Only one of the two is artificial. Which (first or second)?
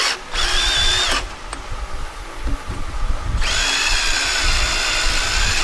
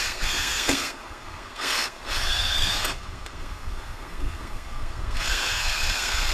second